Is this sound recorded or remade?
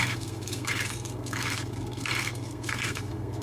remade